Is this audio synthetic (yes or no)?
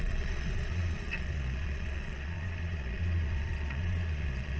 yes